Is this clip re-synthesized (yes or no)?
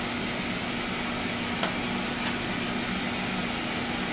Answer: no